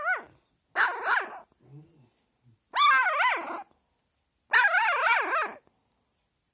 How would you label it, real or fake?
real